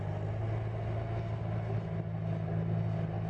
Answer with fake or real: real